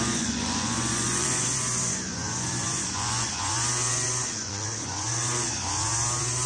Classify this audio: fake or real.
fake